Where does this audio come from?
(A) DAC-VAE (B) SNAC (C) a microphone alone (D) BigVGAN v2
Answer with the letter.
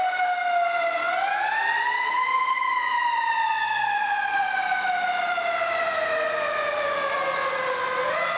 C